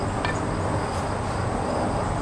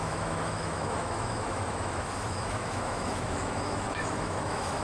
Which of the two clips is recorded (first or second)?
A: first